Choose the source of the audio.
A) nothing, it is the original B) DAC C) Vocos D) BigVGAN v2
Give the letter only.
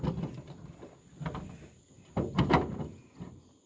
A